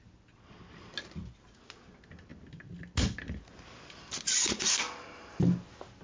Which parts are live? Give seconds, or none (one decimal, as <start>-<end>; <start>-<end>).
0.0-6.0